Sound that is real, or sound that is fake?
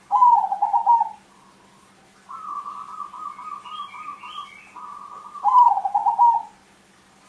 real